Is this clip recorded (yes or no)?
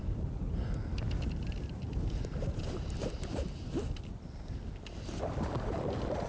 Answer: yes